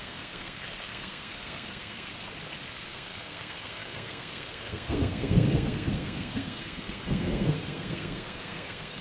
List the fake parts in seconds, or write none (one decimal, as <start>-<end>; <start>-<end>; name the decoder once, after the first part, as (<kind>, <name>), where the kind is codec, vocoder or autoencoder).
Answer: 0.0-2.1 (codec, SNAC); 2.7-9.0